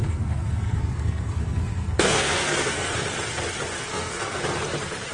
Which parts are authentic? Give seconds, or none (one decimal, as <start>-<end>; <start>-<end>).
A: 2.9-3.8; 4.4-5.1